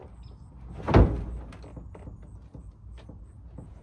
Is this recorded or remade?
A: recorded